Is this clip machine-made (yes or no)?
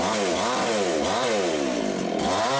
no